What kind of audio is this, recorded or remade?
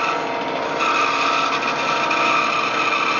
recorded